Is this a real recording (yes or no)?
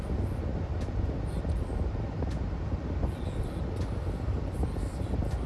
yes